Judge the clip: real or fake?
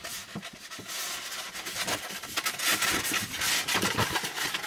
real